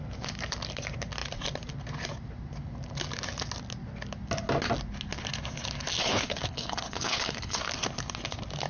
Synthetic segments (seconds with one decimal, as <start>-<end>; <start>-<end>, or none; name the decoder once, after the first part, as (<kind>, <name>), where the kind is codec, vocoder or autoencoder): 6.0-7.6 (codec, HILCodec)